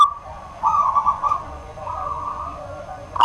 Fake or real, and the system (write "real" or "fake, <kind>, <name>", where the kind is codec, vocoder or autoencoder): fake, vocoder, Vocos